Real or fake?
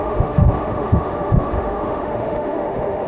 fake